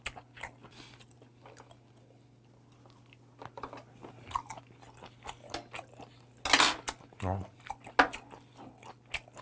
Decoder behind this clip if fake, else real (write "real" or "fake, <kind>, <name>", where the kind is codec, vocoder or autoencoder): real